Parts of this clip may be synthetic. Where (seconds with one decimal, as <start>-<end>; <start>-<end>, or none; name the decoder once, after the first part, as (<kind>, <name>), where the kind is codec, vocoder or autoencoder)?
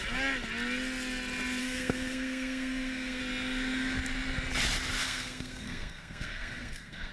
1.6-3.2 (codec, SNAC); 5.0-7.1